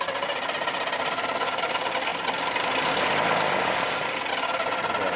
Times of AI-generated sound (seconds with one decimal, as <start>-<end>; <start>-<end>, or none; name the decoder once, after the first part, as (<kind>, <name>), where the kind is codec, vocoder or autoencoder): none